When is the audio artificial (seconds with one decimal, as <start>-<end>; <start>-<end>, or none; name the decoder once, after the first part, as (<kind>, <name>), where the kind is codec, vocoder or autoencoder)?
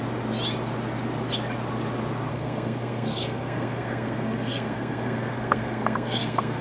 2.3-6.6 (codec, SNAC)